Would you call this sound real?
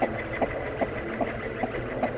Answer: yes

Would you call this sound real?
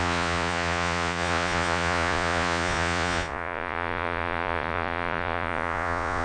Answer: no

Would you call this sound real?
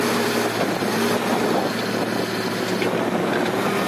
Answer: yes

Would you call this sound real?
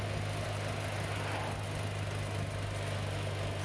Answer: yes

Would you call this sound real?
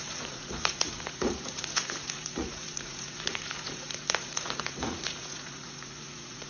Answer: no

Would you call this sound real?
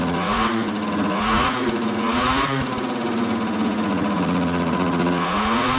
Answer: no